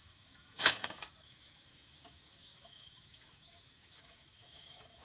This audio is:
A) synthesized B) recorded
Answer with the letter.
A